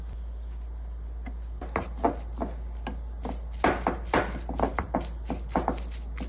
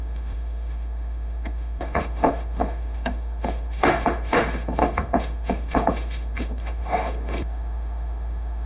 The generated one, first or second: second